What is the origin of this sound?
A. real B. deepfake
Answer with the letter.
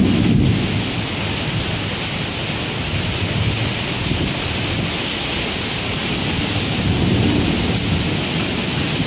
A